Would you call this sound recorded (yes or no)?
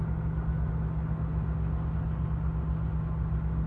yes